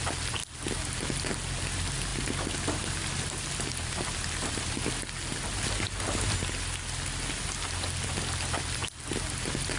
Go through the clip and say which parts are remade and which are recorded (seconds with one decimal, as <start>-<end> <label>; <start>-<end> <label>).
0.0-0.4 recorded; 0.4-1.3 remade; 1.3-9.8 recorded